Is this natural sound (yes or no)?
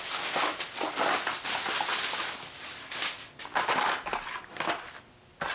yes